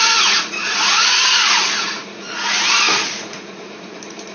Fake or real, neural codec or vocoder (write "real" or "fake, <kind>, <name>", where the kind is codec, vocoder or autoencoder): fake, vocoder, Vocos